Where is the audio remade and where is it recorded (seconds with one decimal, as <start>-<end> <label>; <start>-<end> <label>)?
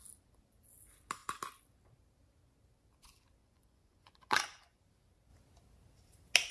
0.0-3.4 recorded; 3.4-4.8 remade; 4.8-6.5 recorded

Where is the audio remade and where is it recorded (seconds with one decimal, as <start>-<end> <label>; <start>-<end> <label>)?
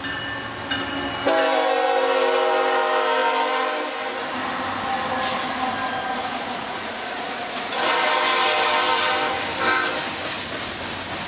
0.0-6.2 recorded; 6.2-8.1 remade; 8.1-11.3 recorded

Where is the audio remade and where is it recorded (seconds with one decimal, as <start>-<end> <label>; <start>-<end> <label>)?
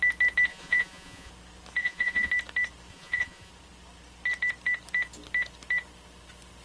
0.0-0.5 recorded; 0.5-1.3 remade; 1.3-1.8 recorded; 1.8-2.3 remade; 2.3-2.9 recorded; 2.9-3.5 remade; 3.5-6.6 recorded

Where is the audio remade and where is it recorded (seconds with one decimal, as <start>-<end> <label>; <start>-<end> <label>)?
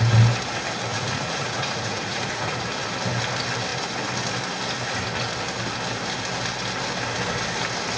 0.0-0.9 recorded; 0.9-2.6 remade; 2.6-8.0 recorded